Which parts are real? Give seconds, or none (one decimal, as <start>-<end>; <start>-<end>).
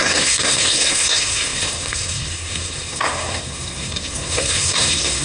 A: none